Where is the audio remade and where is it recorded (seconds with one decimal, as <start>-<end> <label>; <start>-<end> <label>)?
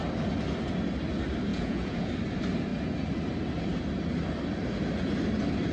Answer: 0.0-1.5 recorded; 1.5-2.1 remade; 2.1-5.7 recorded